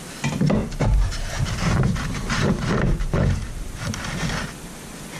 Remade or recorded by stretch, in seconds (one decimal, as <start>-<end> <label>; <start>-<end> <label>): 0.0-0.6 recorded; 0.6-3.7 remade; 3.7-5.2 recorded